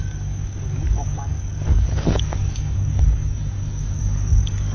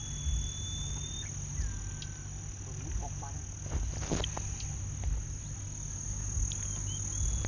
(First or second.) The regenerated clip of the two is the first